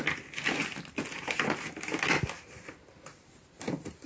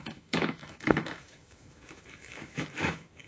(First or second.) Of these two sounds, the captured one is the first